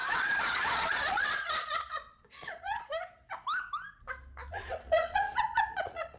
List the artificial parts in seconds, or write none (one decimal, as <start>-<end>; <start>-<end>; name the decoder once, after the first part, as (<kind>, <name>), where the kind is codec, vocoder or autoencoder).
0.0-2.9 (vocoder, Vocos); 4.5-6.2